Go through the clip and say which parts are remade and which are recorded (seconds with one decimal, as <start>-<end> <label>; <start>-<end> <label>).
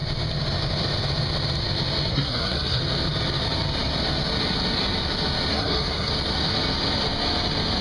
0.0-2.1 recorded; 2.1-2.8 remade; 2.8-5.5 recorded; 5.5-6.1 remade; 6.1-7.8 recorded